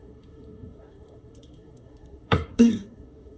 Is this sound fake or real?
fake